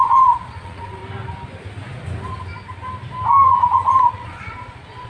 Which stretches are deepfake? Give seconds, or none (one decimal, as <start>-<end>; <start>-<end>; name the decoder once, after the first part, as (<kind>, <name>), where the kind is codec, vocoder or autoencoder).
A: 0.0-1.0 (vocoder, Vocos); 4.1-5.1